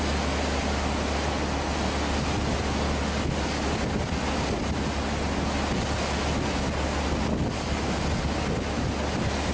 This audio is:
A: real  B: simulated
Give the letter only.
A